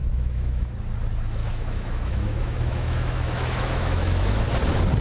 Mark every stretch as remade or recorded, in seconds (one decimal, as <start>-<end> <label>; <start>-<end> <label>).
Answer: 0.0-0.7 remade; 0.7-1.4 recorded; 1.4-4.4 remade; 4.4-5.0 recorded

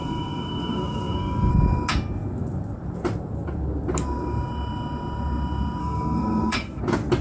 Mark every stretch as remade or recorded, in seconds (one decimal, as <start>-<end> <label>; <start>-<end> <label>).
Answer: 0.0-1.5 remade; 1.5-5.8 recorded; 5.8-6.8 remade; 6.8-7.2 recorded

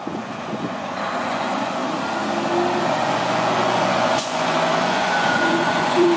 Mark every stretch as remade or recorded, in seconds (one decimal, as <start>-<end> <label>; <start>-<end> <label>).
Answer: 0.0-1.8 remade; 1.8-2.8 recorded; 2.8-6.2 remade

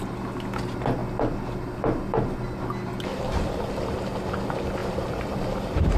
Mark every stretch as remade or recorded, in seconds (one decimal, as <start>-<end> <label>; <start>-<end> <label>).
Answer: 0.0-3.1 recorded; 3.1-3.7 remade; 3.7-4.8 recorded; 4.8-6.0 remade

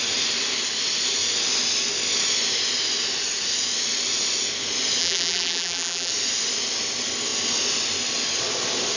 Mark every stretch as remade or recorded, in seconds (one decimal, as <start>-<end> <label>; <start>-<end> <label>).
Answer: 0.0-5.0 recorded; 5.0-6.1 remade; 6.1-9.0 recorded

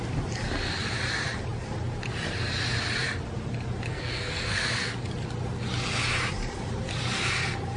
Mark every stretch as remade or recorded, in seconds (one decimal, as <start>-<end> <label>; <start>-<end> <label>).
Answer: 0.0-3.9 recorded; 3.9-4.9 remade; 4.9-7.8 recorded

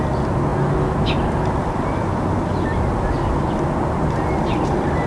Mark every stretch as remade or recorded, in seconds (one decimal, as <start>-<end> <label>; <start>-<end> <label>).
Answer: 0.0-5.1 recorded